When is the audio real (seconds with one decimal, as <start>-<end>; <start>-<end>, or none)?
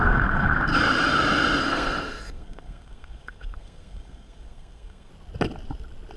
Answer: 0.7-1.6; 5.1-6.2